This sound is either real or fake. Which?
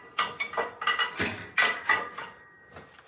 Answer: real